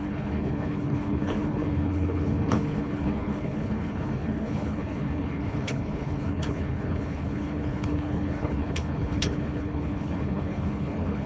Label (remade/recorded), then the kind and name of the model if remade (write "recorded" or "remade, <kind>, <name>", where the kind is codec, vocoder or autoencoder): remade, codec, HILCodec